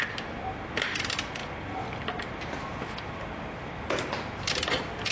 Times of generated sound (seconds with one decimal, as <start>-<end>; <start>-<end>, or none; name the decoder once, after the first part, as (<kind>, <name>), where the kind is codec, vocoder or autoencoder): none